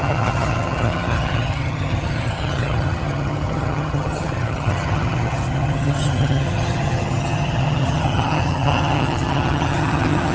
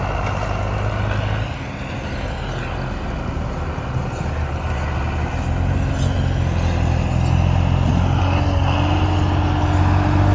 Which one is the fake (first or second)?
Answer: first